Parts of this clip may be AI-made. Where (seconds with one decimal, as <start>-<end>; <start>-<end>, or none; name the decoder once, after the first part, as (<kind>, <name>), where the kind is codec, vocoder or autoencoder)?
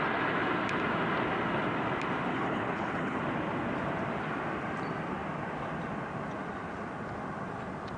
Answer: 2.3-3.2 (codec, HILCodec)